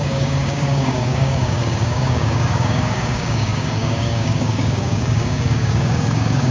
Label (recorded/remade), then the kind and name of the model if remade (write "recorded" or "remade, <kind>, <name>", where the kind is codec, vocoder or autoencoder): remade, codec, DAC